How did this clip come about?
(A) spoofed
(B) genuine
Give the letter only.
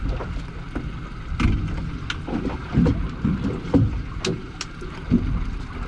B